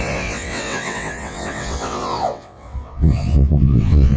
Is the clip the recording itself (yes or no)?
no